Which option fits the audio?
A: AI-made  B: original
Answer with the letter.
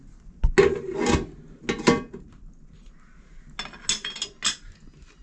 B